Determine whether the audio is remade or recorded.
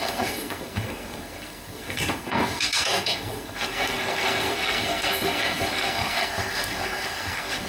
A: remade